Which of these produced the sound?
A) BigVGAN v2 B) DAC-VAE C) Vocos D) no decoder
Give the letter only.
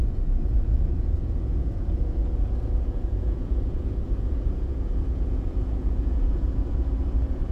C